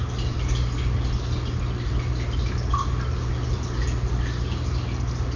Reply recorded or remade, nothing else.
recorded